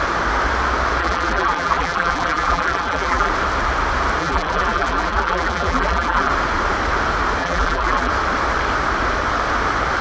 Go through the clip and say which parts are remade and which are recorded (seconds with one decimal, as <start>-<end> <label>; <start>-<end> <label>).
0.0-1.0 recorded; 1.0-3.3 remade; 3.3-4.2 recorded; 4.2-6.3 remade; 6.3-7.4 recorded; 7.4-8.1 remade; 8.1-10.0 recorded